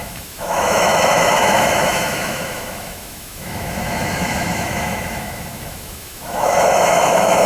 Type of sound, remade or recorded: remade